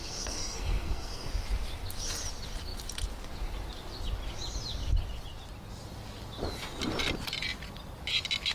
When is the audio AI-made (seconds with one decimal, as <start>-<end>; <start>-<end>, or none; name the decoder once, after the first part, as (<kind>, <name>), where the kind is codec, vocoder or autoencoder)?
0.0-1.3 (codec, SNAC)